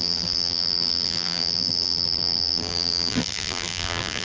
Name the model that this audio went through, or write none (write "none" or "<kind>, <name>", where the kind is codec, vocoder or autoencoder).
vocoder, BigVGAN v2